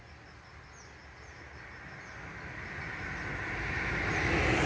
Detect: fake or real real